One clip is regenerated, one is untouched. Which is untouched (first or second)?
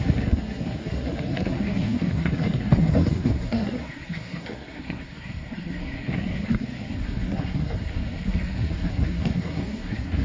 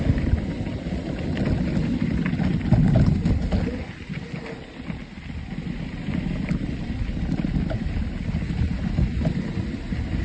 second